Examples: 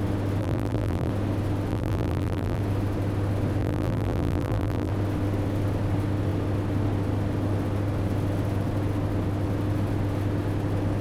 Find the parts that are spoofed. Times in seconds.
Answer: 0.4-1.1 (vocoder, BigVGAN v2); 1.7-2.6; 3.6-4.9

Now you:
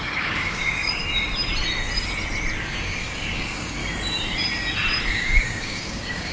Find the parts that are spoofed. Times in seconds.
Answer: 0.0-1.0 (codec, DAC); 2.6-3.8; 5.1-6.3

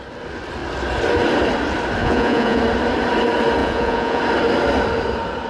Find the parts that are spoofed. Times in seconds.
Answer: 2.0-2.6 (vocoder, Vocos); 3.6-4.2

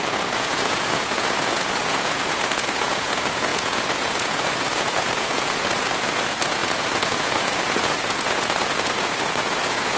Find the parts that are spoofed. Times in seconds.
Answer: 0.0-10.0 (vocoder, Vocos)